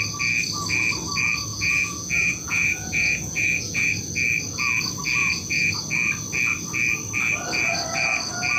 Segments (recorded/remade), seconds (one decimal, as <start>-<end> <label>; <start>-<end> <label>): 0.0-1.5 recorded; 1.5-3.9 remade; 3.9-5.2 recorded; 5.2-5.7 remade; 5.7-8.6 recorded